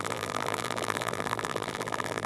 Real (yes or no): no